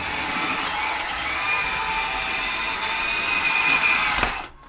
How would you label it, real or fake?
real